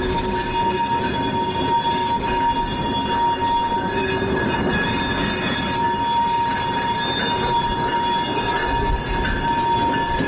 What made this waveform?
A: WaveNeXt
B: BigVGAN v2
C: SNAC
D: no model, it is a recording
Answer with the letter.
D